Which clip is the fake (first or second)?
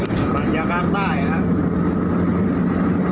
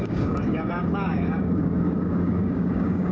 second